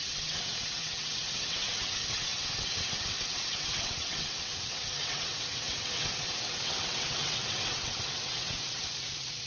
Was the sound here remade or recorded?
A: remade